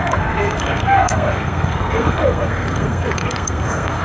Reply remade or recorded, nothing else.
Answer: remade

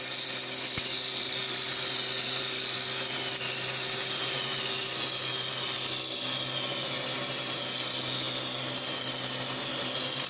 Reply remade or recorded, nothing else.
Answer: recorded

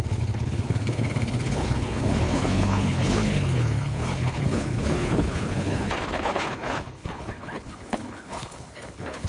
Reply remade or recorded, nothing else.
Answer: remade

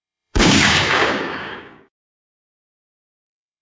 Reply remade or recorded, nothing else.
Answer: remade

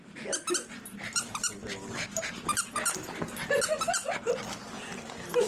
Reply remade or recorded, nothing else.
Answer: recorded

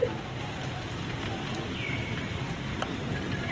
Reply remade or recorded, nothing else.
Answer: recorded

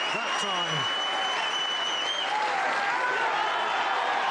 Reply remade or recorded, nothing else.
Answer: recorded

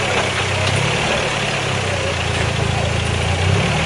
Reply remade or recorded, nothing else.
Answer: recorded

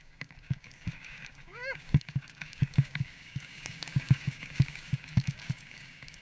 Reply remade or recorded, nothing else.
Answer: remade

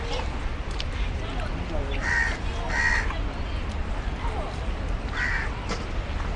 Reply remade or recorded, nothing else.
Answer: recorded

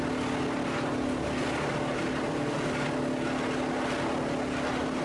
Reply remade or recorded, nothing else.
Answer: recorded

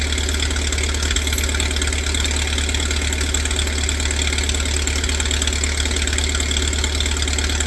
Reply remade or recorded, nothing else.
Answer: recorded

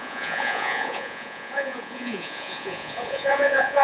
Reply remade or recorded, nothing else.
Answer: remade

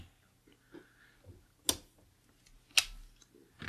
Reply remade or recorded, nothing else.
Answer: recorded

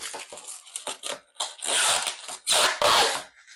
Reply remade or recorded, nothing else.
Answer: recorded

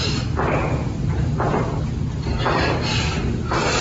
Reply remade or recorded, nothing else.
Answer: recorded